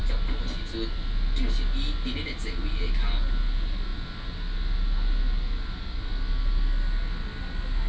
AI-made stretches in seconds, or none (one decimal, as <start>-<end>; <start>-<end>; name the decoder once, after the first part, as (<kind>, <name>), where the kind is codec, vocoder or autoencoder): none